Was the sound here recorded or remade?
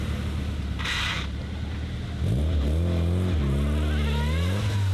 recorded